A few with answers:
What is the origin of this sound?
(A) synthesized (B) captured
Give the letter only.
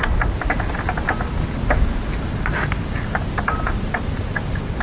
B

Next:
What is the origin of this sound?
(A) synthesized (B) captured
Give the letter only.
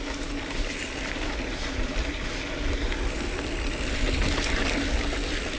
B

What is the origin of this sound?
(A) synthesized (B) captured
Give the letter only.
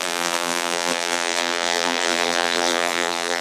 A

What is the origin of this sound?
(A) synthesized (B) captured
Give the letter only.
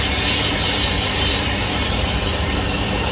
A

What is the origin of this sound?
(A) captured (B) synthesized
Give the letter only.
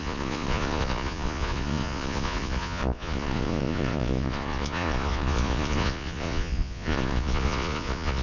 B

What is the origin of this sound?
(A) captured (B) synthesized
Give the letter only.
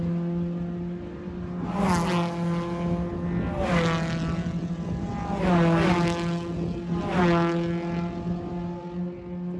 A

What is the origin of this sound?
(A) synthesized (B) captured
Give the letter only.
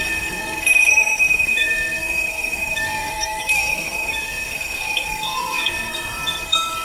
A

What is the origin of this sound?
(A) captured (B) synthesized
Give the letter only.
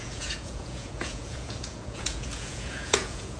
B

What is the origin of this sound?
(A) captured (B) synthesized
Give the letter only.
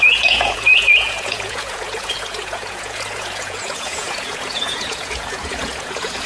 B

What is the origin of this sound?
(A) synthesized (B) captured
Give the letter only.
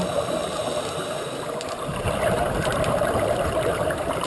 A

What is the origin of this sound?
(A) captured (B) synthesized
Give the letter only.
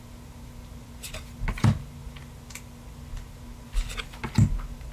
A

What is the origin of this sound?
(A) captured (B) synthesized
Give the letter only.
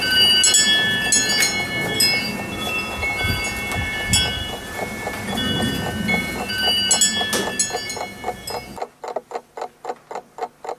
A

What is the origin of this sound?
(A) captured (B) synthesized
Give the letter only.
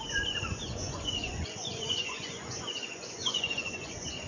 B